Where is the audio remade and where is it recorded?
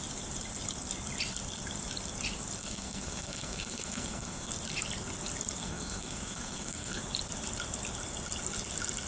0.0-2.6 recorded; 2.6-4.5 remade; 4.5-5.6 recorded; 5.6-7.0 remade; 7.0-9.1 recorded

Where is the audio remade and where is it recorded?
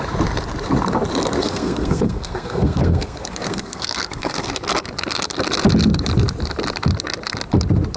0.0-1.4 recorded; 1.4-4.5 remade; 4.5-8.0 recorded